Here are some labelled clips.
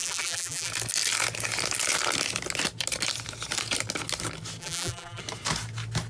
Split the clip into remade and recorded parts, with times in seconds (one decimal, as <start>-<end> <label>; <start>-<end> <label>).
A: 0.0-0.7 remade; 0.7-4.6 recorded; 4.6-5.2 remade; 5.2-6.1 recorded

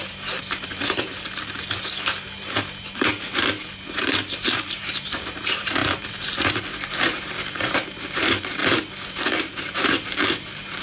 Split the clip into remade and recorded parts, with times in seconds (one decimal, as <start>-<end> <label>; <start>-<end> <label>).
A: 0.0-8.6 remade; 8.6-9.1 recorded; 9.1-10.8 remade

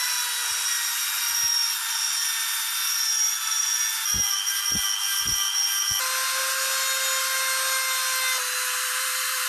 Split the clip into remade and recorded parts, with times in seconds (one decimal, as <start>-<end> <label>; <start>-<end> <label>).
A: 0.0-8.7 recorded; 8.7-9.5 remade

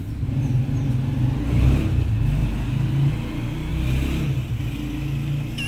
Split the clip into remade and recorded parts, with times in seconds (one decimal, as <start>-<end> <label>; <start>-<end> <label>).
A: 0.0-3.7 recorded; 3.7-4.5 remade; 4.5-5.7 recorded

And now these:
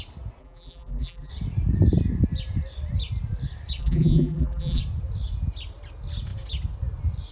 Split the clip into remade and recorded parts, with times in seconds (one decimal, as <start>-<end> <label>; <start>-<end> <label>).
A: 0.0-0.4 recorded; 0.4-1.3 remade; 1.3-3.8 recorded; 3.8-4.8 remade; 4.8-7.3 recorded